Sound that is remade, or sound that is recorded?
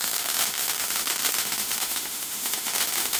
remade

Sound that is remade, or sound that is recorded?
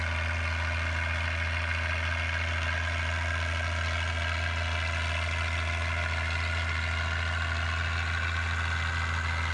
recorded